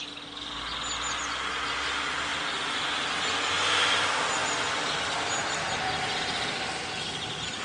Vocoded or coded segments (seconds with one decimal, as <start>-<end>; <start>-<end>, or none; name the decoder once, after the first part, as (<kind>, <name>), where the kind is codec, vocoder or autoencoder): none